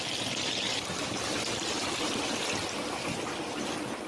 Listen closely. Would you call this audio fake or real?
real